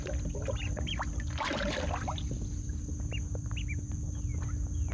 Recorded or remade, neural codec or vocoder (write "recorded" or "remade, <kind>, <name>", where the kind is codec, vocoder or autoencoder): recorded